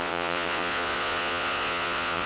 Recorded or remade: remade